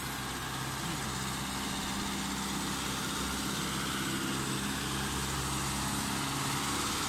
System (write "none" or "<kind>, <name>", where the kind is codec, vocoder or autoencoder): none